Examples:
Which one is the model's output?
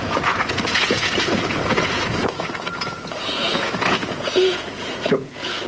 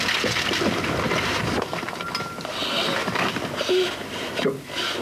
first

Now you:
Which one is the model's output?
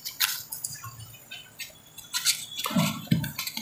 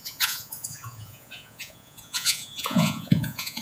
second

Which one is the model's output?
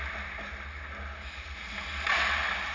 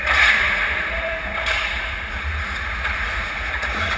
second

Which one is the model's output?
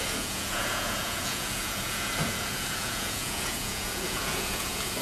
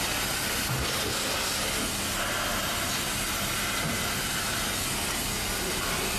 first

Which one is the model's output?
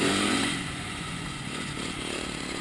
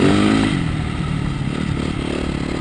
first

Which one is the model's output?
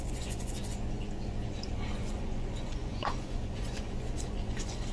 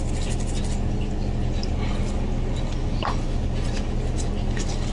first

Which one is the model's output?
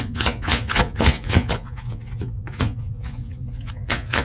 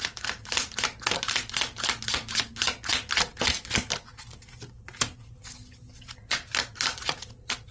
first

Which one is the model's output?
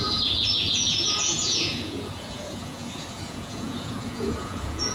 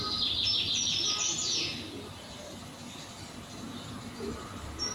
first